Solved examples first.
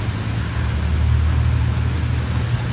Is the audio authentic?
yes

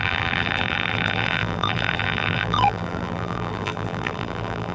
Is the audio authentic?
no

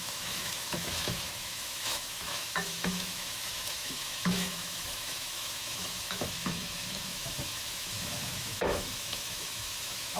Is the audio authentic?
no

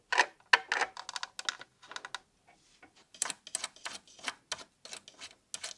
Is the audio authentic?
yes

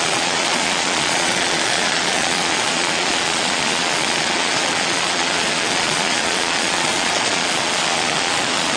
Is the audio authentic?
no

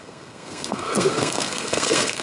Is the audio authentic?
no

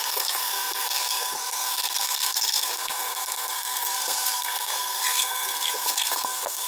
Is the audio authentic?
no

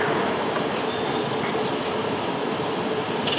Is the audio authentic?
yes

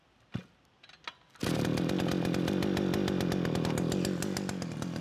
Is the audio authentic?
yes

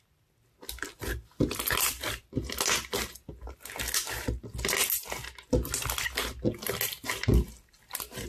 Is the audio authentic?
yes